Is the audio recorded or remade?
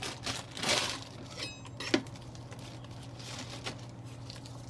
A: recorded